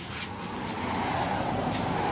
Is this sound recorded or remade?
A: recorded